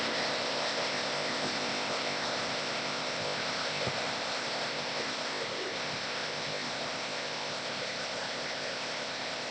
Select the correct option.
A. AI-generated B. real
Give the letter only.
A